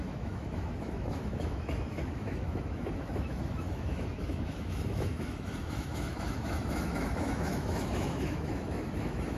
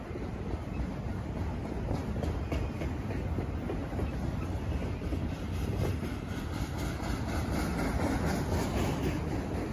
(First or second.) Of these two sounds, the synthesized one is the first